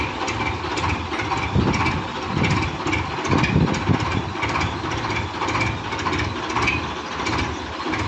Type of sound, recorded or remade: recorded